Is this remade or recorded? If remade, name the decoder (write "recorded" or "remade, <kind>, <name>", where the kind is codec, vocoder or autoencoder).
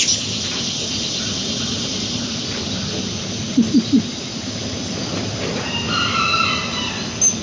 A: recorded